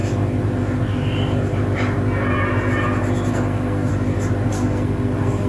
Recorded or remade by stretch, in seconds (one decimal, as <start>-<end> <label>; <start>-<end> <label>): 0.0-3.3 recorded; 3.3-3.9 remade; 3.9-4.5 recorded; 4.5-5.5 remade